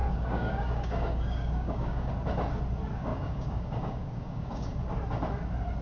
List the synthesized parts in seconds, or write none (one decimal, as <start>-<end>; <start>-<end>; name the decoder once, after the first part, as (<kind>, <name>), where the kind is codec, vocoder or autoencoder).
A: 0.0-2.1 (codec, DAC); 3.1-4.8